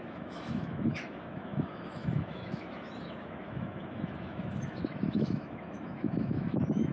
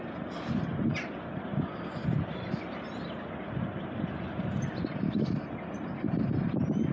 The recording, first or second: second